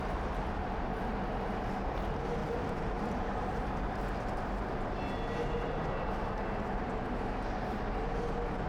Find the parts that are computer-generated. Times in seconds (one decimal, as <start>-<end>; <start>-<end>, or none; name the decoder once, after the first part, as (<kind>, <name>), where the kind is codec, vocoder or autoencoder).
2.4-3.7 (vocoder, BigVGAN v2)